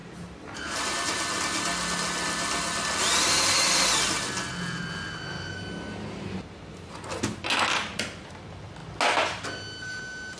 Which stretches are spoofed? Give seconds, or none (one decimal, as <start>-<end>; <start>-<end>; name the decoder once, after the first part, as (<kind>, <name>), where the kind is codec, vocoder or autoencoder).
0.0-0.9 (vocoder, BigVGAN v2)